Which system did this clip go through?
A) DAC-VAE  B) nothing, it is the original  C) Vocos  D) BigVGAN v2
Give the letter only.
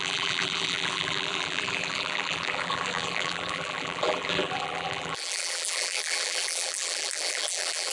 D